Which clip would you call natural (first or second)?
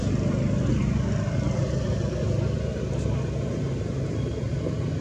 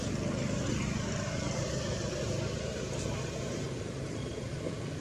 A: first